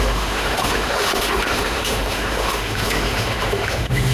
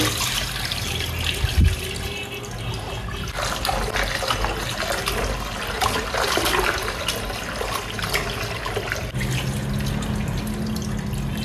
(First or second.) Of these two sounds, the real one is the second